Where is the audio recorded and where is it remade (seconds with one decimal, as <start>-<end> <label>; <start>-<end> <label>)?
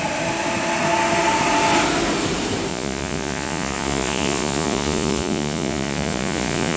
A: 0.0-2.7 recorded; 2.7-6.8 remade